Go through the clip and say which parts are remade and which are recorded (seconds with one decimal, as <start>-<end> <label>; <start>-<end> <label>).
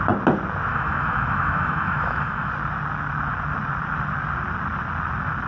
0.0-0.7 recorded; 0.7-2.5 remade; 2.5-5.5 recorded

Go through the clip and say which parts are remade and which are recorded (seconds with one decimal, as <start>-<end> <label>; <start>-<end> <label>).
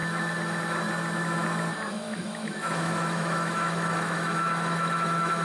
0.0-1.9 recorded; 1.9-5.4 remade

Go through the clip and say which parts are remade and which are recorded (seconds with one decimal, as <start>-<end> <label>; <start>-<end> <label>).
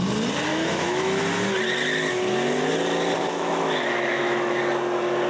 0.0-0.5 recorded; 0.5-1.2 remade; 1.2-3.2 recorded; 3.2-4.6 remade; 4.6-5.3 recorded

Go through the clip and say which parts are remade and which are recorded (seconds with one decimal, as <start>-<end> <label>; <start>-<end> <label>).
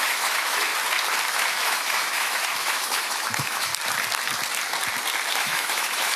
0.0-0.7 remade; 0.7-1.3 recorded; 1.3-3.7 remade; 3.7-5.3 recorded; 5.3-6.2 remade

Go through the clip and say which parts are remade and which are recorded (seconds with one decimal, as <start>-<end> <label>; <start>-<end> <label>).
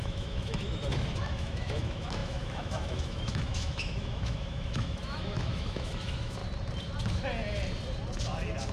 0.0-6.4 remade; 6.4-8.7 recorded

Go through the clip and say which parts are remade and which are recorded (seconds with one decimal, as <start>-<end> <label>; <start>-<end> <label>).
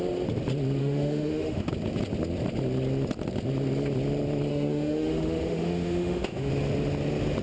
0.0-0.8 recorded; 0.8-1.7 remade; 1.7-4.5 recorded; 4.5-6.5 remade; 6.5-7.4 recorded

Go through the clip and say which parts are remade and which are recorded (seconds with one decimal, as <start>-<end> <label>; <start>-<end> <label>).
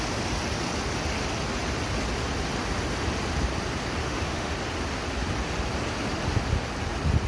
0.0-4.0 recorded; 4.0-4.5 remade; 4.5-7.3 recorded